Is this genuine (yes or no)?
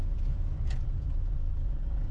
no